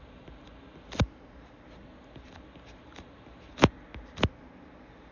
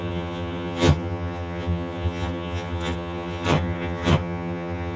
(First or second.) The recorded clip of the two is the first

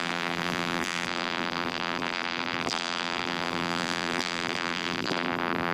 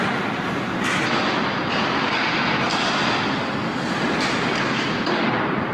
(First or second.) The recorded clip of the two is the second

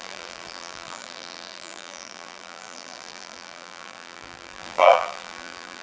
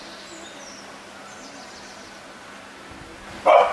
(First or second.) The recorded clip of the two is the second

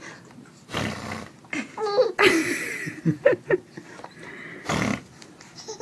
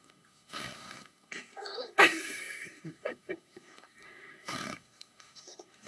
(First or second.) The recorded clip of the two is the first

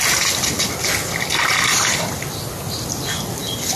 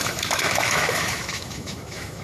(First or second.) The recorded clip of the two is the first